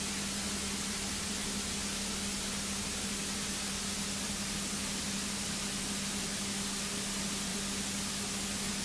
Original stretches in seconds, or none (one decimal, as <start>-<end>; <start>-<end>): 0.0-8.8

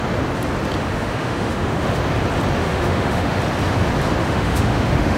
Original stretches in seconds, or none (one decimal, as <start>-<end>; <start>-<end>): 0.0-0.8; 2.0-2.6; 3.4-4.2

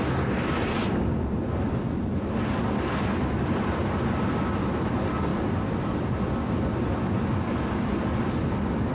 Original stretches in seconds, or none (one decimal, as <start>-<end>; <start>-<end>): 0.0-8.9

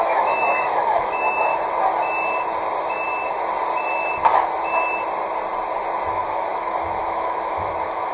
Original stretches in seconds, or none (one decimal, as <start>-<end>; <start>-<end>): 1.5-6.1

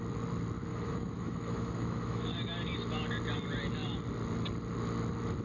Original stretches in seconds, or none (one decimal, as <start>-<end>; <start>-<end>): 0.0-0.7; 2.3-5.4